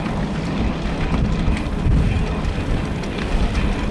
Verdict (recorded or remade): recorded